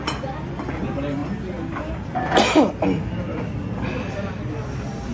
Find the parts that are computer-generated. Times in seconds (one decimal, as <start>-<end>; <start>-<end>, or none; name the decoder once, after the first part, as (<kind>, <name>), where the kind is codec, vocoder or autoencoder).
none